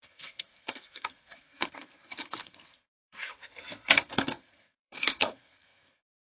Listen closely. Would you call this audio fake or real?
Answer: fake